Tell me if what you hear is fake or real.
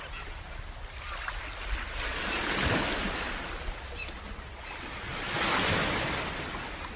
real